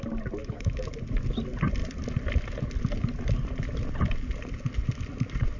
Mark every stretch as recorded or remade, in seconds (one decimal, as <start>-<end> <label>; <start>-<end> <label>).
0.0-0.4 recorded; 0.4-0.9 remade; 0.9-5.6 recorded